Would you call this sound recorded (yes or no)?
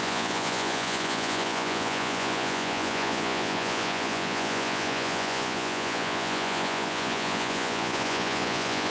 no